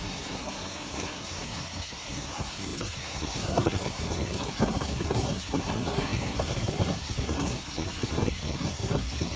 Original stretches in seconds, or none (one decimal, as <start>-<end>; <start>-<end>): none